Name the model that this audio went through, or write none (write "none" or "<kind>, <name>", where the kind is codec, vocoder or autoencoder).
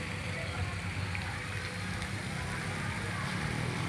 none